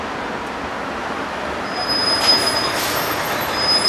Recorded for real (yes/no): yes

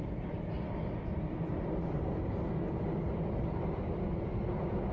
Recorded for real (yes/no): yes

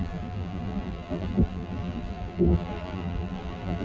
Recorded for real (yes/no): no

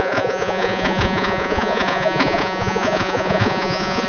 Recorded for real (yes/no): no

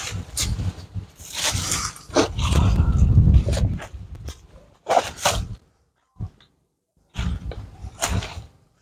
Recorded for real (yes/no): no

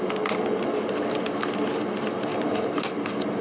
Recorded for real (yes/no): yes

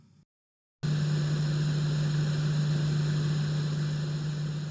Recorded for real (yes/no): yes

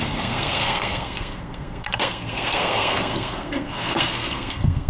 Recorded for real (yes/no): no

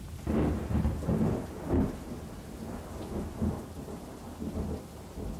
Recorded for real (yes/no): yes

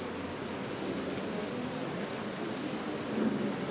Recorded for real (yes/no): yes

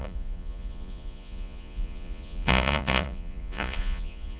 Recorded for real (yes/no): no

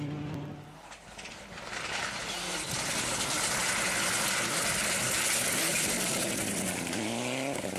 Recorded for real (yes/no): yes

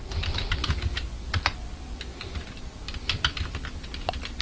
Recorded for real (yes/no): yes